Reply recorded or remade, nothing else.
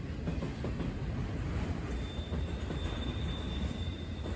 recorded